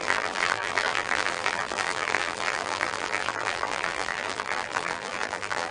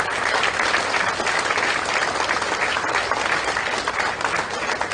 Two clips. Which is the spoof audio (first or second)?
first